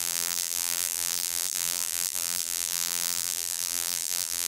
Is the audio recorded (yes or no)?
no